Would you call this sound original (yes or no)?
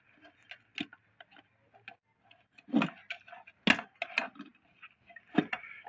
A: yes